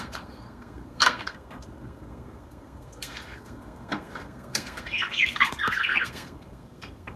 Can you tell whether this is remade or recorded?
remade